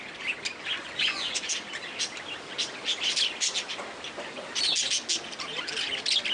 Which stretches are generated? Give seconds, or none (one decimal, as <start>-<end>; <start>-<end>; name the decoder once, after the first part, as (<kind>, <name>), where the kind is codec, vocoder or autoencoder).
0.8-1.5 (vocoder, Vocos)